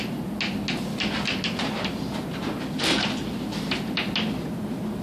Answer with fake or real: real